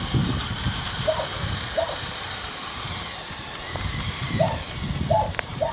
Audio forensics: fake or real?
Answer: fake